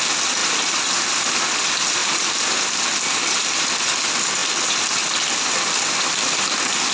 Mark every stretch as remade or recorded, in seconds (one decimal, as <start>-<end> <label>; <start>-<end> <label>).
0.0-6.9 recorded